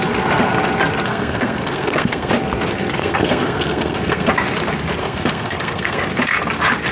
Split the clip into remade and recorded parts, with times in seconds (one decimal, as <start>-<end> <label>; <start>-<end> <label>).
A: 0.0-1.1 recorded; 1.1-2.3 remade; 2.3-3.0 recorded; 3.0-4.3 remade; 4.3-5.0 recorded; 5.0-6.0 remade; 6.0-6.9 recorded